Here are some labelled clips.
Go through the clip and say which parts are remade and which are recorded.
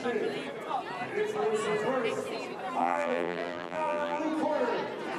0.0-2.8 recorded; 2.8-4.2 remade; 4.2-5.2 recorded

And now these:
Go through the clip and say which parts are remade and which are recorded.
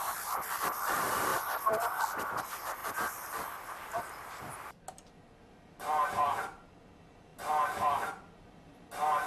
0.0-2.8 recorded; 2.8-6.1 remade; 6.1-7.3 recorded; 7.3-8.8 remade; 8.8-9.3 recorded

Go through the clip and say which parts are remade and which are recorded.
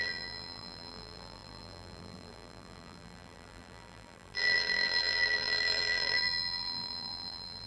0.0-7.7 remade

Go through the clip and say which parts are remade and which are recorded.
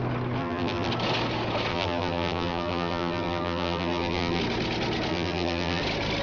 0.0-0.4 recorded; 0.4-0.9 remade; 0.9-1.7 recorded; 1.7-4.4 remade; 4.4-5.1 recorded; 5.1-5.8 remade; 5.8-6.2 recorded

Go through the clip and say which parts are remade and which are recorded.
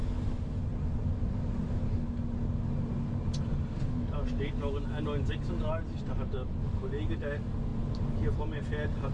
0.0-9.1 recorded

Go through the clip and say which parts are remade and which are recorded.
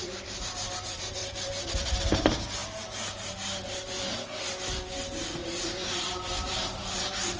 0.0-7.4 remade